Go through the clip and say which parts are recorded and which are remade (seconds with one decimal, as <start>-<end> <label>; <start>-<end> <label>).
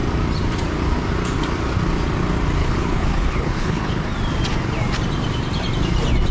0.0-2.6 recorded; 2.6-4.0 remade; 4.0-6.3 recorded